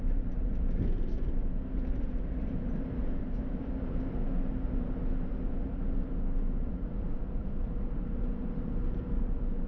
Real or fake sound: fake